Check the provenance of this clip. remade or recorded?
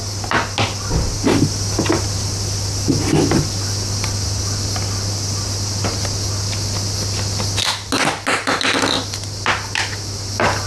recorded